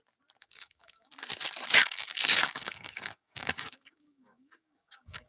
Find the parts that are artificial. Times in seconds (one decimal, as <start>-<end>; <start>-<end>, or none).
0.4-1.1; 1.8-5.3